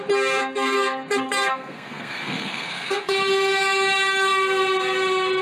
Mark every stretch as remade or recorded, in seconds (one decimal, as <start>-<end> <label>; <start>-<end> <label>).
0.0-0.4 recorded; 0.4-3.1 remade; 3.1-5.4 recorded